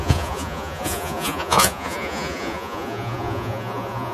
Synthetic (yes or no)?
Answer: yes